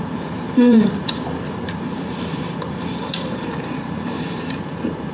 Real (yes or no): no